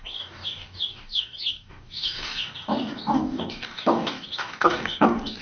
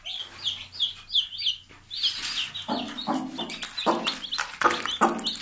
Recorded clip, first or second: second